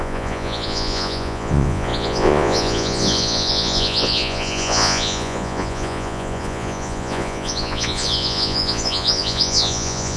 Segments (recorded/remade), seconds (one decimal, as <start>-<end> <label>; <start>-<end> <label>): 0.0-10.2 remade